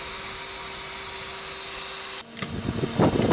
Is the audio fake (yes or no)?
no